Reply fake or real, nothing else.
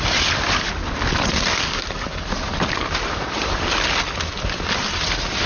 real